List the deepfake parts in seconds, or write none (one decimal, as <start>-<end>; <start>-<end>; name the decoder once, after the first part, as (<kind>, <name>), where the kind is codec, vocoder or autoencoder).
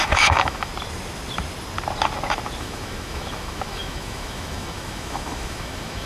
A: 0.0-0.7 (autoencoder, DAC-VAE); 2.6-6.1